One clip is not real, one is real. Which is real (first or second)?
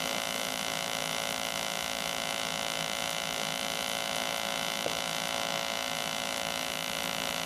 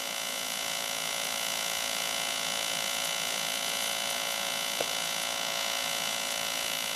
first